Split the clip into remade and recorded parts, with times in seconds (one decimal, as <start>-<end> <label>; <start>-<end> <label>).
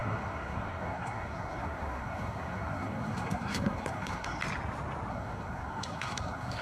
0.0-4.4 remade; 4.4-5.1 recorded; 5.1-6.6 remade